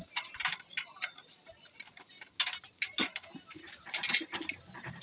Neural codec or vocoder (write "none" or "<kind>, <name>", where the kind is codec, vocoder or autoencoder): none